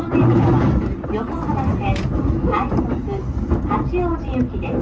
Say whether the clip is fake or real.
real